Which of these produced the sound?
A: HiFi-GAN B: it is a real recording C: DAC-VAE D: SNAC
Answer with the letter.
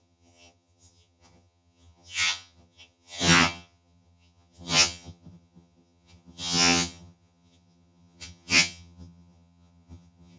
A